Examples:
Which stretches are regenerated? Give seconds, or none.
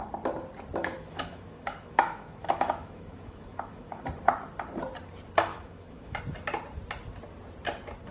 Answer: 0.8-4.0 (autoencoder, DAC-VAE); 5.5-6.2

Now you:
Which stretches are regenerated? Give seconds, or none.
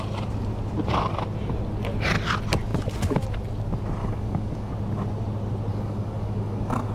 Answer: 4.0-4.7 (codec, DAC); 5.7-6.9